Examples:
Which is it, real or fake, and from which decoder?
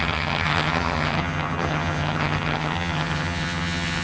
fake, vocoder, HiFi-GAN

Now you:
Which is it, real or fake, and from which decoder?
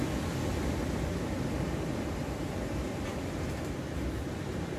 fake, vocoder, BigVGAN v2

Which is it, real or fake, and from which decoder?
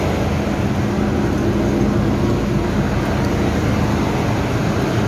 real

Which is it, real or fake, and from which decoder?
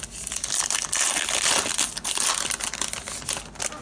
real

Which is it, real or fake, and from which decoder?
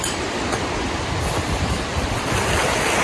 real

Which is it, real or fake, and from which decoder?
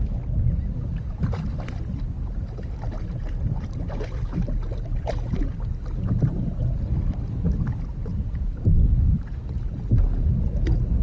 real